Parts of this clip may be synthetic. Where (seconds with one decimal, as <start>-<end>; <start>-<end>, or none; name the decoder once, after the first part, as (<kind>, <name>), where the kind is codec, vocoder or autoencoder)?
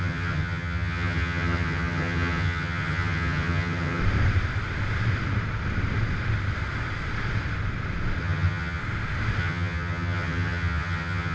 0.0-4.0 (vocoder, HiFi-GAN); 8.2-8.8; 9.4-11.3